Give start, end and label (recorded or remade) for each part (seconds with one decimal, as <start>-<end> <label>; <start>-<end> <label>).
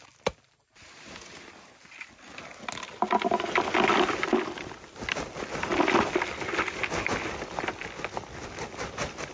0.0-9.3 recorded